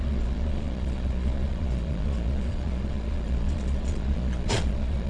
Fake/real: fake